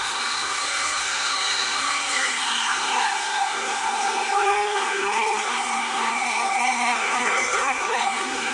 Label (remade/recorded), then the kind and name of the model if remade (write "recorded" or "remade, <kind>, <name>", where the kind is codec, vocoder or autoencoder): remade, codec, SNAC